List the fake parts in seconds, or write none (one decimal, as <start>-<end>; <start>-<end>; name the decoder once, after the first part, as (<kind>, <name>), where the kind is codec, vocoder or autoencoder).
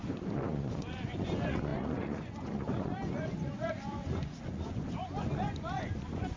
0.0-6.4 (vocoder, Vocos)